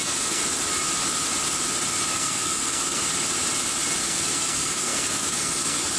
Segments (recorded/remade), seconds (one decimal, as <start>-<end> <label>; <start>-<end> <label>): 0.0-0.4 remade; 0.4-2.1 recorded; 2.1-3.1 remade; 3.1-4.0 recorded; 4.0-6.0 remade